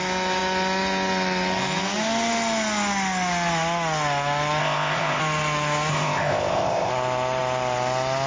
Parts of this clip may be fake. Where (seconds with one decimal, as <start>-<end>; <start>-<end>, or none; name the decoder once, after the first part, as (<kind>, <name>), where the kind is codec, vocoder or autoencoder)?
4.6-5.2 (codec, ZipCodec); 5.9-6.9